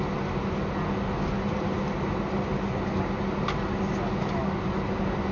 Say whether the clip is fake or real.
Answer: real